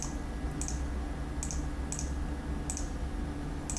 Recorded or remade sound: recorded